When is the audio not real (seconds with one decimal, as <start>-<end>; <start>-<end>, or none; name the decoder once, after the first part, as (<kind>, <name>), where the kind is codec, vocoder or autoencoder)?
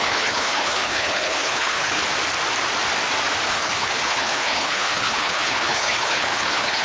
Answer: 0.0-2.0 (codec, HILCodec); 3.5-6.8